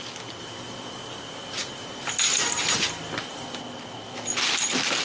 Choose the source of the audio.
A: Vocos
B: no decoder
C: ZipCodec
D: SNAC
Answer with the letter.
B